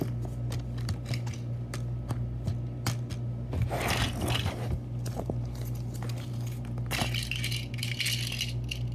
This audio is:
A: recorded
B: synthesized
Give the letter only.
A